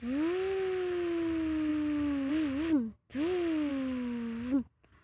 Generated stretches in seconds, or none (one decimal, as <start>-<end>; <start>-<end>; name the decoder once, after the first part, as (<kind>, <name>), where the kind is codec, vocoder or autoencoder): none